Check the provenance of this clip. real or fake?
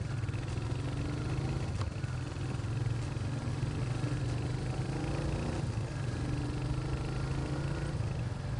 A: real